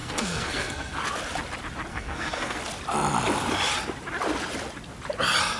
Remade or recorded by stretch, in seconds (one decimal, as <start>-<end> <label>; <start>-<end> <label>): 0.0-1.0 remade; 1.0-1.9 recorded; 1.9-2.6 remade; 2.6-5.6 recorded